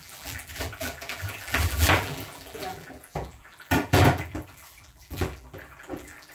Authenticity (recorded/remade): remade